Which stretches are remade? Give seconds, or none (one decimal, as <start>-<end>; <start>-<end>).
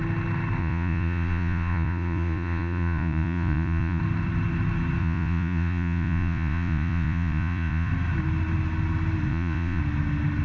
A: 0.6-4.0; 5.0-7.9; 9.3-9.8